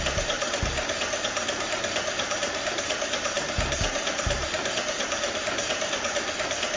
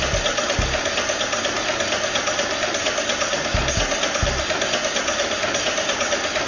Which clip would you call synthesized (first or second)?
first